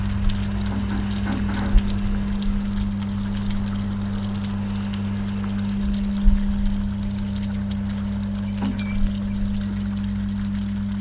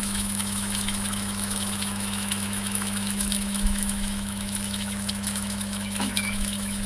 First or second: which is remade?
second